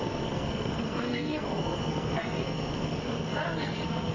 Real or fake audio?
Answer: fake